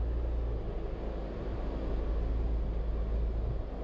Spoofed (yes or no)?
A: no